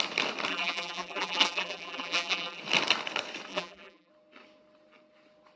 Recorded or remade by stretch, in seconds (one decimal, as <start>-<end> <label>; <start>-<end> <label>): 0.0-0.5 recorded; 0.5-2.6 remade; 2.6-3.5 recorded; 3.5-4.1 remade; 4.1-5.6 recorded